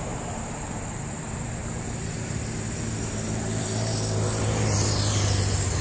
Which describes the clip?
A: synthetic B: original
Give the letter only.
A